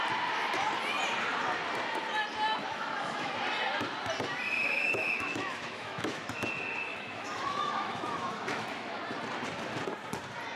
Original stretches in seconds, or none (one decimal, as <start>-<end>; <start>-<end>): 0.0-2.6; 3.3-4.6; 6.2-6.9; 9.0-10.6